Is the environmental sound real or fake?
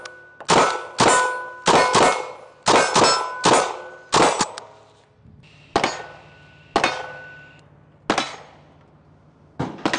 real